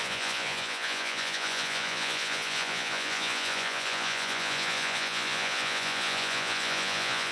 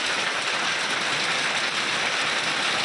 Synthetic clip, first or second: first